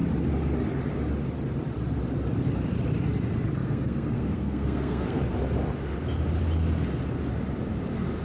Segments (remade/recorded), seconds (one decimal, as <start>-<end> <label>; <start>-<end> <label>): 0.0-3.6 recorded; 3.6-5.2 remade; 5.2-8.2 recorded